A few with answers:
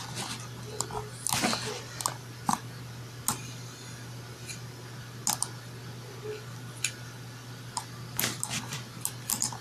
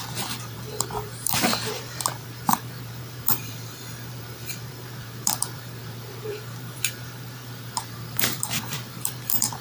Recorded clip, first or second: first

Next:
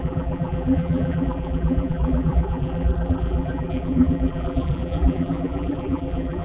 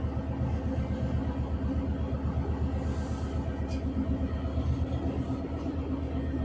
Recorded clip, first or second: second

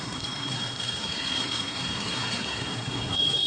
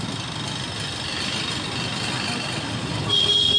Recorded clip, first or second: second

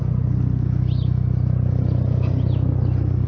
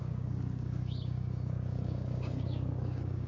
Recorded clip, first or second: first